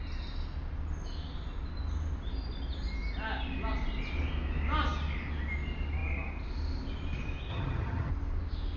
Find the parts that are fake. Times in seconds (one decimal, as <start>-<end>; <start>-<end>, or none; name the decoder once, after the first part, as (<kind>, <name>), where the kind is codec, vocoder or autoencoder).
7.5-8.1 (vocoder, HiFi-GAN)

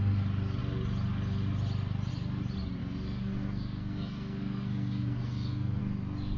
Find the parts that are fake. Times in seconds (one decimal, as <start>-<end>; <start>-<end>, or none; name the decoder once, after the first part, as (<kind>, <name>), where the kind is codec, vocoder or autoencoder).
2.8-5.8 (codec, SNAC)